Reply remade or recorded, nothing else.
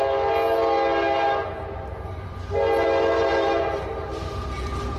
recorded